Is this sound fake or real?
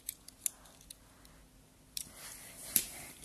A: real